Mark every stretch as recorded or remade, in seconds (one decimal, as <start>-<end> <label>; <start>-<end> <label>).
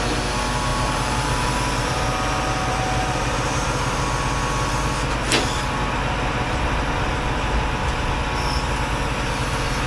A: 0.0-0.7 recorded; 0.7-4.0 remade; 4.0-9.9 recorded